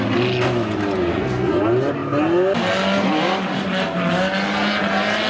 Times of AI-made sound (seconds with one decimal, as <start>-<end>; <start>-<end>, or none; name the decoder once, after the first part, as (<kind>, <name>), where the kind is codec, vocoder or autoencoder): 1.1-1.6 (codec, SNAC)